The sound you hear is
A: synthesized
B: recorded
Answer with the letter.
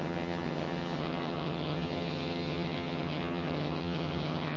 A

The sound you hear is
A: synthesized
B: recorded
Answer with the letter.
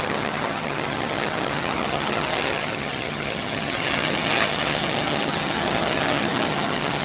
A